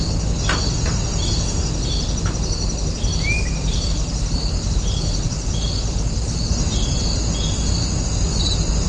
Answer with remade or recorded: recorded